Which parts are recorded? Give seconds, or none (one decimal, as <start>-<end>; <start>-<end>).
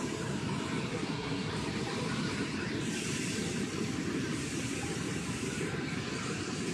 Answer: 0.0-0.9; 1.5-6.7